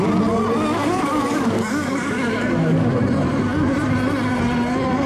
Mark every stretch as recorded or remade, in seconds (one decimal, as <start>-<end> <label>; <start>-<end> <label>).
0.0-0.8 recorded; 0.8-3.0 remade; 3.0-5.1 recorded